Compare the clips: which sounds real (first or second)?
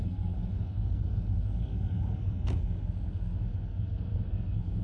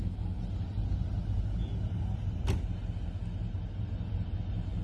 second